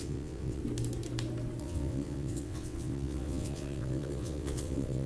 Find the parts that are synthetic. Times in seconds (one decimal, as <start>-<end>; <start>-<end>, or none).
0.0-0.6; 1.6-5.1